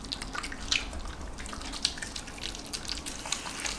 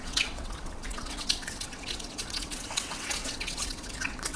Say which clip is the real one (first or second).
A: first